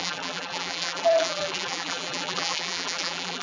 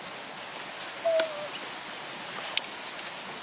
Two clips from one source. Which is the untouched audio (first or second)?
second